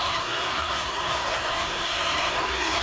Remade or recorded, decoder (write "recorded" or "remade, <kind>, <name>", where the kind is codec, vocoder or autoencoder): remade, codec, SNAC